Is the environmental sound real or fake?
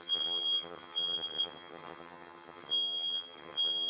fake